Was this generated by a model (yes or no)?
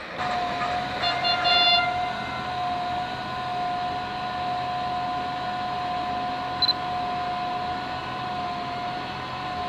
no